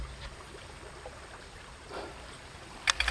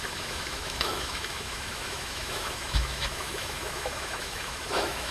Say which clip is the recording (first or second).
first